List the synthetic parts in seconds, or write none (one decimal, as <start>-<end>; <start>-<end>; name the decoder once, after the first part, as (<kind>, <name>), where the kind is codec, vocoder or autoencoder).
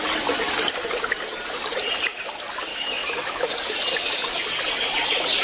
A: 2.7-3.5 (autoencoder, DAC-VAE)